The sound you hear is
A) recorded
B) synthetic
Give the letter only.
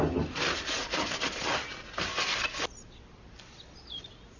A